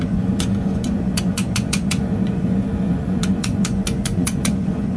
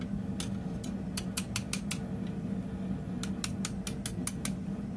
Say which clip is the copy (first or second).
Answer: first